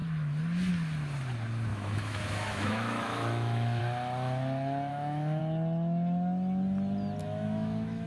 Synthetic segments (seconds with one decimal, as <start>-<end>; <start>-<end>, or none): 1.7-3.8; 4.9-5.4; 7.2-8.1